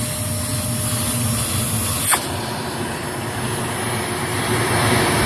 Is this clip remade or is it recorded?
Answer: recorded